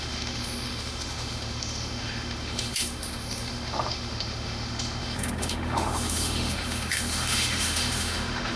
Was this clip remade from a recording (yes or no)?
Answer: yes